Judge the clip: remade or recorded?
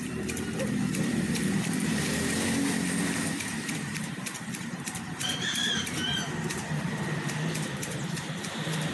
remade